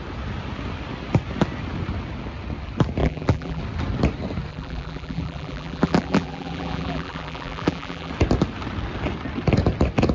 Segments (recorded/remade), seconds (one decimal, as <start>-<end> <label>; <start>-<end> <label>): 0.0-3.0 recorded; 3.0-3.6 remade; 3.6-4.5 recorded; 4.5-8.1 remade; 8.1-10.1 recorded